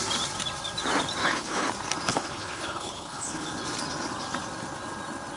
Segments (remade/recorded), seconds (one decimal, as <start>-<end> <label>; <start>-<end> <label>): 0.0-1.2 recorded; 1.2-1.7 remade; 1.7-2.1 recorded; 2.1-3.5 remade; 3.5-5.4 recorded